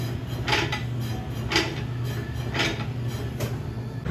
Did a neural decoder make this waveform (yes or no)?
no